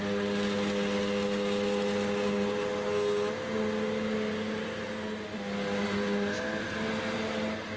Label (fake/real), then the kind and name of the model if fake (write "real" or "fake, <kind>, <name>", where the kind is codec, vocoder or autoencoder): real